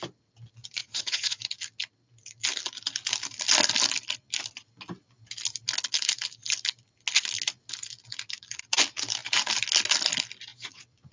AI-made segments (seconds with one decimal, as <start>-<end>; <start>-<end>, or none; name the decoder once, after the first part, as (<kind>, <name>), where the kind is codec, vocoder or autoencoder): 0.8-1.4 (vocoder, Vocos); 10.5-11.1